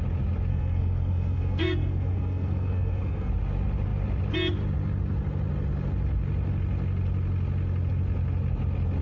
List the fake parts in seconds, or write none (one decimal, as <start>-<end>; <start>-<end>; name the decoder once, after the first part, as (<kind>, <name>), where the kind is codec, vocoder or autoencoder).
0.5-3.3 (codec, SNAC)